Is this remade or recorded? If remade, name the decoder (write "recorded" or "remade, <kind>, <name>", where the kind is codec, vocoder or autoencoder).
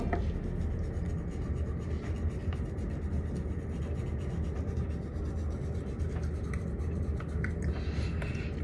recorded